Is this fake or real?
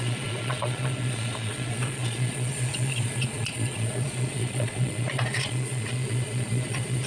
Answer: fake